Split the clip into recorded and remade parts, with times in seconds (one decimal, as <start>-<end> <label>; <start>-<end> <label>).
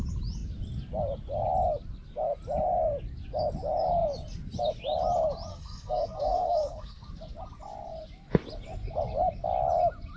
0.0-5.5 recorded; 5.5-7.1 remade; 7.1-10.2 recorded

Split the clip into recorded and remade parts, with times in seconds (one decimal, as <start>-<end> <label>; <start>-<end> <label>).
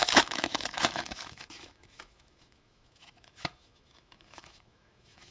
0.0-5.3 remade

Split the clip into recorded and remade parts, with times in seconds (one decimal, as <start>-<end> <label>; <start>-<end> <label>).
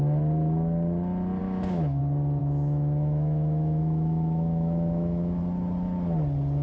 0.0-1.4 recorded; 1.4-2.0 remade; 2.0-2.4 recorded; 2.4-5.4 remade; 5.4-6.6 recorded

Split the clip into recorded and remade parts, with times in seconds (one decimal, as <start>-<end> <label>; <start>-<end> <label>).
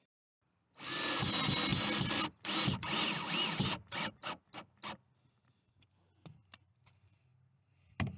0.0-8.2 recorded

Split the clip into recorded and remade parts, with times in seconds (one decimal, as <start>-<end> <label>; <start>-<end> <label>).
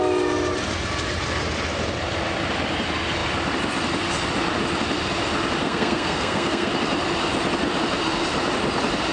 0.0-5.6 recorded; 5.6-6.7 remade; 6.7-9.1 recorded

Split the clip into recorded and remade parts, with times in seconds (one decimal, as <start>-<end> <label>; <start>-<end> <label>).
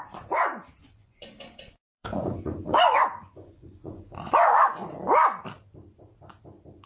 0.0-0.8 recorded; 0.8-4.9 remade; 4.9-6.9 recorded